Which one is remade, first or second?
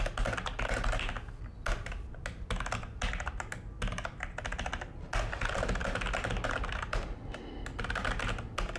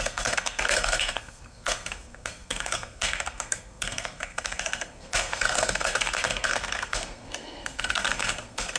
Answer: second